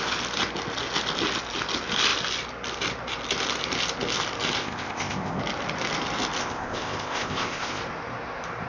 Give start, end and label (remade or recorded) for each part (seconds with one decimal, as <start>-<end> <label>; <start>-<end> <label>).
0.0-4.6 recorded; 4.6-5.4 remade; 5.4-6.4 recorded; 6.4-7.8 remade; 7.8-8.7 recorded